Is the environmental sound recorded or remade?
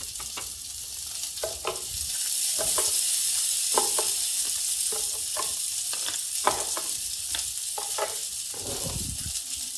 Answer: remade